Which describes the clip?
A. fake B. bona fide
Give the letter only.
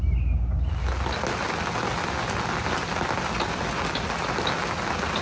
B